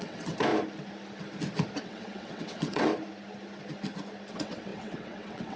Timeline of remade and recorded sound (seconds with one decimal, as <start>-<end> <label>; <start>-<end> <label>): 0.0-0.5 remade; 0.5-1.8 recorded; 1.8-2.9 remade; 2.9-4.3 recorded; 4.3-5.6 remade